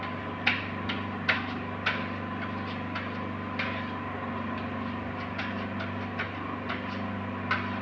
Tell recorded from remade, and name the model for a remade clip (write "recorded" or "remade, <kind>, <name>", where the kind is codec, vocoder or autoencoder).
recorded